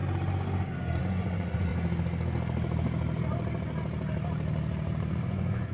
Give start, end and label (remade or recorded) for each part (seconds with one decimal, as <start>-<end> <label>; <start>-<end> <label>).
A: 0.0-1.0 recorded; 1.0-1.7 remade; 1.7-5.1 recorded; 5.1-5.7 remade